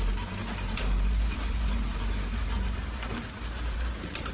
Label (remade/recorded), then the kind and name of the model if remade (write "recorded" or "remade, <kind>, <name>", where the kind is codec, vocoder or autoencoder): remade, vocoder, BigVGAN v2